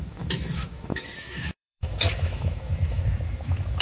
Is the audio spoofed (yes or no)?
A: yes